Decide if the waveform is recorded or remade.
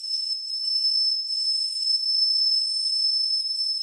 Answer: remade